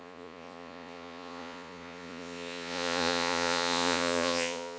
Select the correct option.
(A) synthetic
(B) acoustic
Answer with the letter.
A